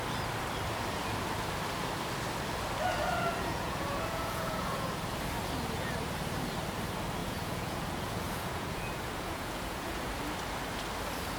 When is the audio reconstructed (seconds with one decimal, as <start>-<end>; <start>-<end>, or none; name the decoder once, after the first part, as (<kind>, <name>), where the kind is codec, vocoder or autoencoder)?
3.3-5.0 (vocoder, Vocos); 7.2-10.1